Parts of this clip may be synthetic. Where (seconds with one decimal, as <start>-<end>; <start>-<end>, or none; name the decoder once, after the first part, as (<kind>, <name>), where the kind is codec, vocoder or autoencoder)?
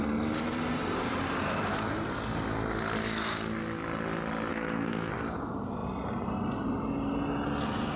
4.5-5.1 (codec, SNAC)